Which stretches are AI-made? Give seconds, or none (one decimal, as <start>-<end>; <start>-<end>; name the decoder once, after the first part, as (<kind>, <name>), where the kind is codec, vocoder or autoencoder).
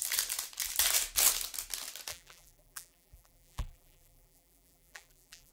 2.1-5.5 (vocoder, BigVGAN v2)